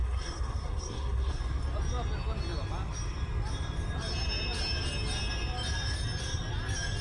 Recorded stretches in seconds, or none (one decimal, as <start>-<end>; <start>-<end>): 1.4-7.0